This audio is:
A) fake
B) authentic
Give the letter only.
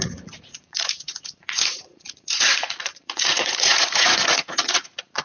A